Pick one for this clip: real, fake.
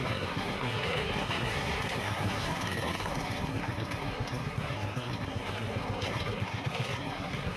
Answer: fake